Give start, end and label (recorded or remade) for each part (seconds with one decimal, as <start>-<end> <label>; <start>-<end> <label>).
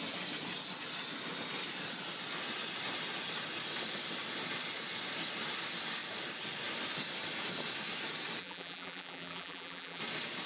0.0-8.4 recorded; 8.4-10.0 remade; 10.0-10.5 recorded